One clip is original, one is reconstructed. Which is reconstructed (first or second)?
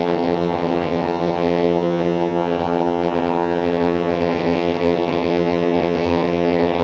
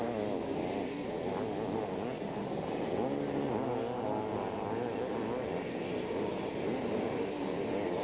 first